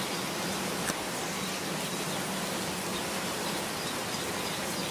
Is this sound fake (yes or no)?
no